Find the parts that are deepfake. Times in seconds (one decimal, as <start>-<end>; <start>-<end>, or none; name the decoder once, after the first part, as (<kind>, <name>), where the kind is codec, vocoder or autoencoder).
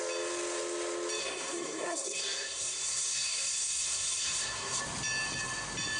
1.2-4.8 (codec, SNAC)